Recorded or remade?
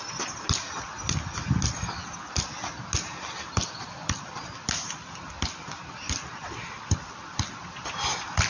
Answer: recorded